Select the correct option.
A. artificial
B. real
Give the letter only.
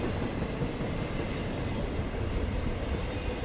B